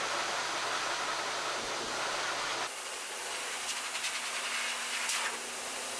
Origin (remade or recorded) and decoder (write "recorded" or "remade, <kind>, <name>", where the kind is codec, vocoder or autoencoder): recorded